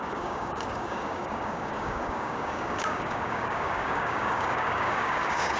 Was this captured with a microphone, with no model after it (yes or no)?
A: no